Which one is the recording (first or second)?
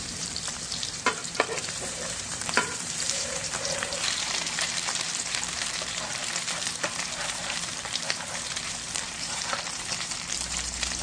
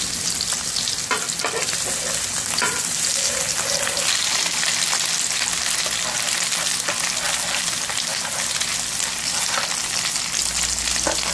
second